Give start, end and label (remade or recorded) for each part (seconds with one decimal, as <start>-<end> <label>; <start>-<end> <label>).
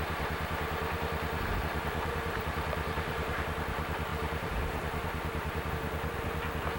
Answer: 0.0-1.7 recorded; 1.7-3.4 remade; 3.4-4.1 recorded; 4.1-5.7 remade; 5.7-6.8 recorded